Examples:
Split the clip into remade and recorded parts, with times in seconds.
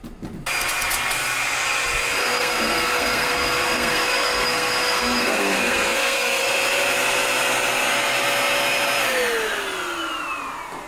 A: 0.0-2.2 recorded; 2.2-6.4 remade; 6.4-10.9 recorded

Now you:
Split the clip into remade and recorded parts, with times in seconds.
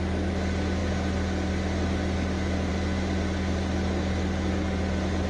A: 0.0-5.3 recorded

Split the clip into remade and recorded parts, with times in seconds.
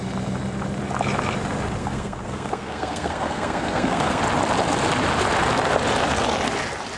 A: 0.0-1.8 recorded; 1.8-4.2 remade; 4.2-7.0 recorded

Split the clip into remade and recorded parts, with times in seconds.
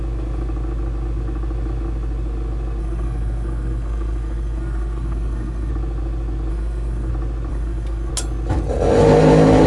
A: 0.0-2.8 recorded; 2.8-5.7 remade; 5.7-6.5 recorded; 6.5-7.1 remade; 7.1-7.5 recorded; 7.5-8.1 remade; 8.1-9.7 recorded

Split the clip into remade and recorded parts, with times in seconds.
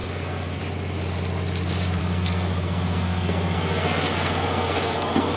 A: 0.0-0.6 remade; 0.6-2.0 recorded; 2.0-5.4 remade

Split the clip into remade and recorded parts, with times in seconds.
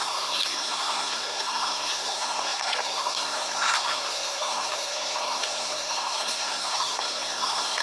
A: 0.0-7.8 remade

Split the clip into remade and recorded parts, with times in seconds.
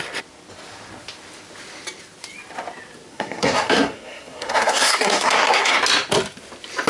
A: 0.0-3.1 recorded; 3.1-5.8 remade; 5.8-6.9 recorded